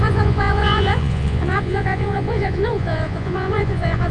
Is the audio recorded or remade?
remade